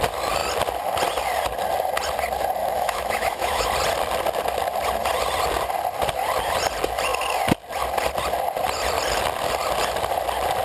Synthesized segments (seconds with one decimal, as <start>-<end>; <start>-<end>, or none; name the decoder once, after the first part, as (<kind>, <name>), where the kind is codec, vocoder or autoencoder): 2.6-3.7 (autoencoder, DAC-VAE)